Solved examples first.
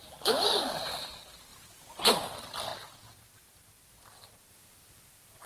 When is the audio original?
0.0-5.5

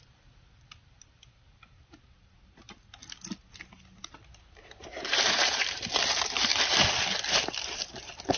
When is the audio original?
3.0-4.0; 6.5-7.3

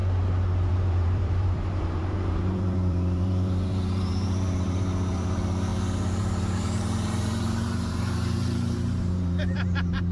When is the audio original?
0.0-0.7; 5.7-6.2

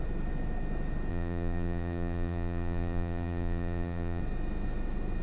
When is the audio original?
0.0-1.1; 4.2-5.2

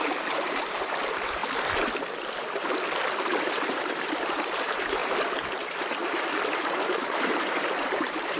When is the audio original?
1.4-3.4; 5.0-6.6